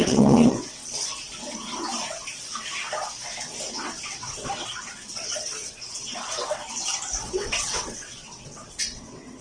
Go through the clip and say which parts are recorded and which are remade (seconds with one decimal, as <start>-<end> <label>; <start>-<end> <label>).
0.0-0.8 remade; 0.8-3.7 recorded; 3.7-6.6 remade; 6.6-7.2 recorded; 7.2-9.4 remade